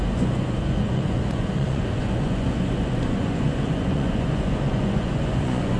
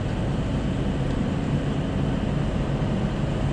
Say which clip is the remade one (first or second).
first